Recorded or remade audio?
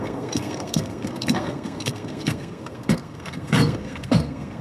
remade